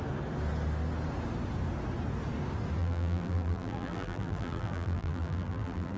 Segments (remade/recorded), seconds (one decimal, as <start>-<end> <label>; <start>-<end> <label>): 0.0-2.8 recorded; 2.8-6.0 remade